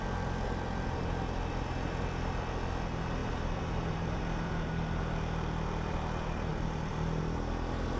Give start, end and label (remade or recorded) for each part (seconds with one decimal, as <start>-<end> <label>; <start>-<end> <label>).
0.0-3.2 recorded; 3.2-5.0 remade; 5.0-6.5 recorded; 6.5-7.2 remade; 7.2-8.0 recorded